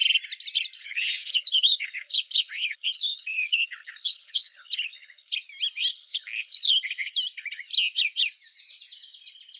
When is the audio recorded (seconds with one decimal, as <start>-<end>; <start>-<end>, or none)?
0.0-0.8; 5.3-5.9; 7.1-9.6